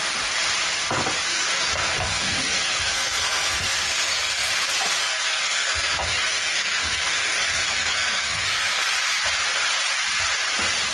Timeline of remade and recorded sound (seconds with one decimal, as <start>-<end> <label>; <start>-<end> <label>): 0.0-1.3 recorded; 1.3-4.5 remade; 4.5-5.0 recorded; 5.0-8.8 remade; 8.8-10.9 recorded